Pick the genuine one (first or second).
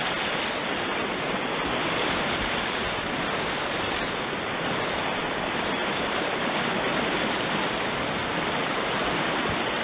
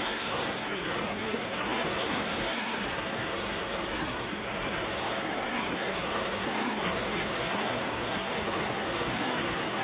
first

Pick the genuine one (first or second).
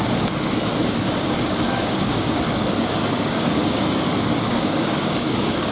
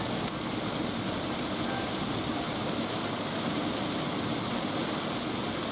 second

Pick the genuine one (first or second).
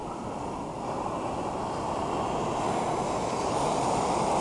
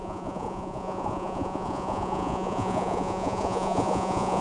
first